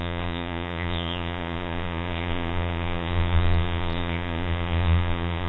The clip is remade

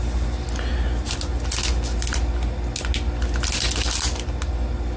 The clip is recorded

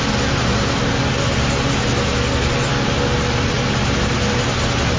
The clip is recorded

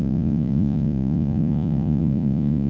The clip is remade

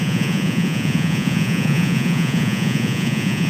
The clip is remade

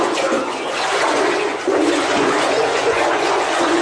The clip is remade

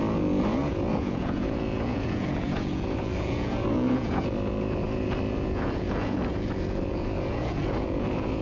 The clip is remade